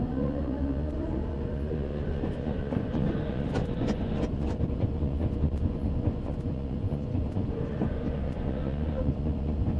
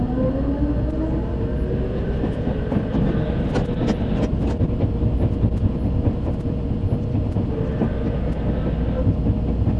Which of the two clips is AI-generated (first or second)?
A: first